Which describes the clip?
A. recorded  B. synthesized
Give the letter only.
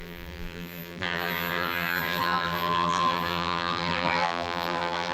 B